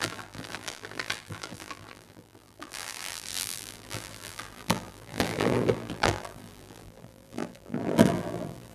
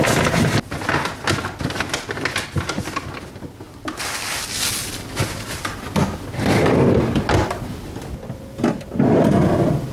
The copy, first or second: first